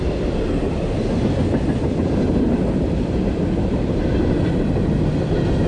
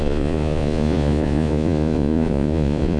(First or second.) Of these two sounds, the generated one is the second